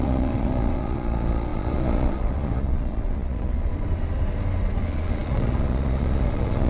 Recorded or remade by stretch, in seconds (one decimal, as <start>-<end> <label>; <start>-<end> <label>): 0.0-3.7 remade; 3.7-4.8 recorded; 4.8-6.7 remade